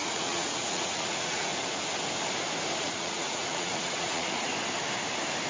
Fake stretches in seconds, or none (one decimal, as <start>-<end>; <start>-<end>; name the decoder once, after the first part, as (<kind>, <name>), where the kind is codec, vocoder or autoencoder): 0.0-1.5 (vocoder, Vocos); 2.8-4.5